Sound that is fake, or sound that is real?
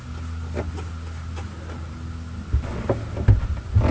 real